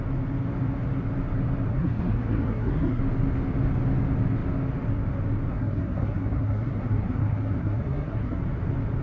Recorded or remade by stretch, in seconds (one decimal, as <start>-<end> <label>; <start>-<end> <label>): 0.0-1.7 recorded; 1.7-3.0 remade; 3.0-5.5 recorded; 5.5-8.4 remade; 8.4-9.0 recorded